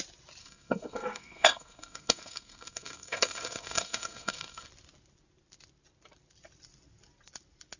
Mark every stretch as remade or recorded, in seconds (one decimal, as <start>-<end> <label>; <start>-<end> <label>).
0.0-0.4 recorded; 0.4-4.7 remade; 4.7-7.8 recorded